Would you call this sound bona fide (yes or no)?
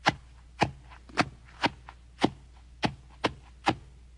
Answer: yes